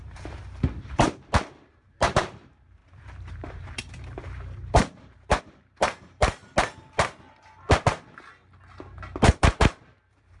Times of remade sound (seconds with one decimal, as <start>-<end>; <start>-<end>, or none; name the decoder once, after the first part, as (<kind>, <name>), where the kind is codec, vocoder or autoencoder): 0.0-6.4 (vocoder, BigVGAN v2); 9.3-10.4